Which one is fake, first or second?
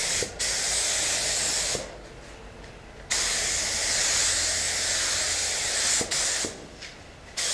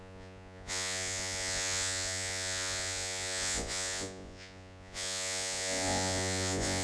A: second